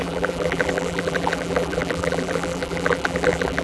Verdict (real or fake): fake